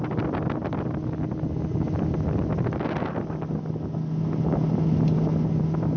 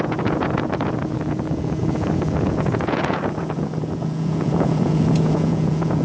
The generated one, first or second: second